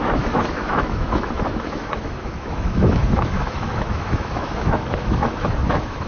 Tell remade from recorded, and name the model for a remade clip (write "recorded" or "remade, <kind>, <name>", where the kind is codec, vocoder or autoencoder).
remade, autoencoder, DAC-VAE